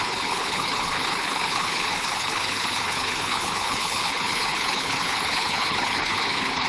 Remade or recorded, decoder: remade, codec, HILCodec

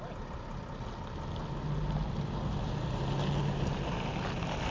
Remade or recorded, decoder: recorded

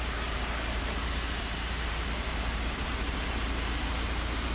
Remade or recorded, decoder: remade, vocoder, BigVGAN v2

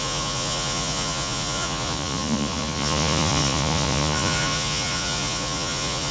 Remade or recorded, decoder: remade, vocoder, Vocos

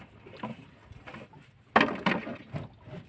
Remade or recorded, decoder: recorded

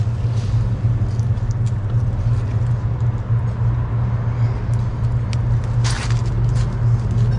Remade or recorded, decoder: recorded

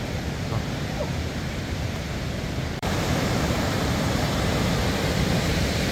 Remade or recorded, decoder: remade, vocoder, BigVGAN v2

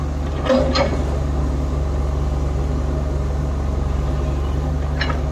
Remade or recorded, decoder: recorded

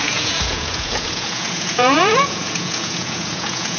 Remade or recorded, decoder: remade, vocoder, Vocos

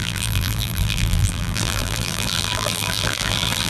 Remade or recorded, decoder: remade, vocoder, BigVGAN v2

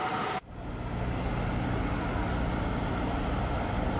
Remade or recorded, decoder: recorded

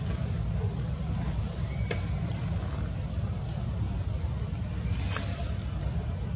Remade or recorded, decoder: recorded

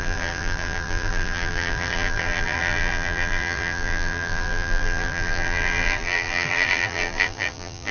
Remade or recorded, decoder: remade, vocoder, BigVGAN v2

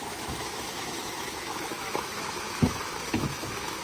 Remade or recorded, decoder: remade, autoencoder, DAC-VAE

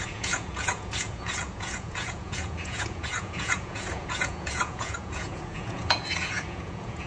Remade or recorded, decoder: remade, vocoder, Vocos